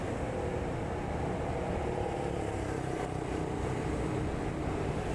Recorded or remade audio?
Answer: recorded